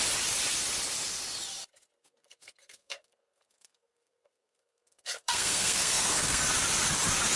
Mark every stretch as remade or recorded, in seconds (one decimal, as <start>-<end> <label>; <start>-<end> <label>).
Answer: 0.0-2.0 recorded; 2.0-6.4 remade; 6.4-7.4 recorded